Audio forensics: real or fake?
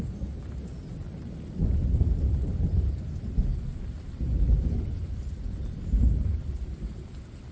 real